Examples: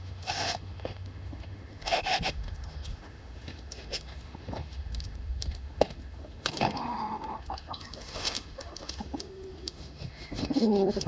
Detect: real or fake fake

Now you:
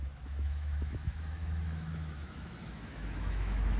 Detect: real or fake fake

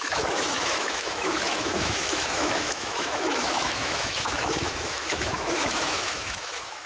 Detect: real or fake fake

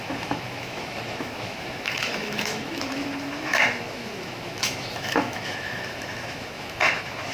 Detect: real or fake fake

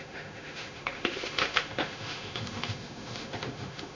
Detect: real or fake fake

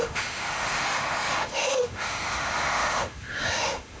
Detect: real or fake fake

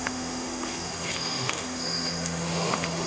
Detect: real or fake fake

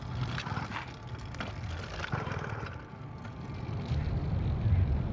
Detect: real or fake real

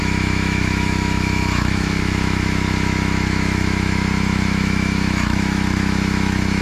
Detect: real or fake fake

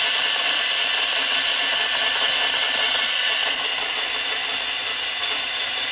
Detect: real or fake real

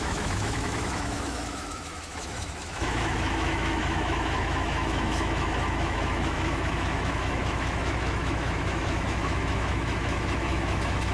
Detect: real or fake fake